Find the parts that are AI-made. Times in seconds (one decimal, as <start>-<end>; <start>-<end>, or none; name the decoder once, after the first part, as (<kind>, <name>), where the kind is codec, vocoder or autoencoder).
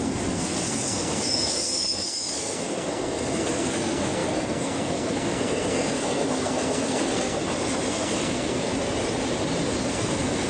0.0-7.4 (codec, SNAC); 7.9-8.7; 9.9-10.5